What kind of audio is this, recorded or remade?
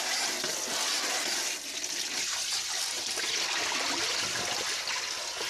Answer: recorded